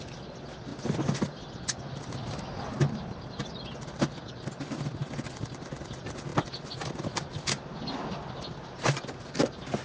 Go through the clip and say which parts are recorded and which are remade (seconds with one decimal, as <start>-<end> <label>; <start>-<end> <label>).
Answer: 0.0-9.8 recorded